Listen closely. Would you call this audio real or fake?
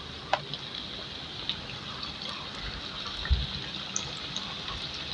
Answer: real